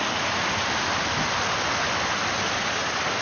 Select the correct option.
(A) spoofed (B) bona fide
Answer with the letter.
B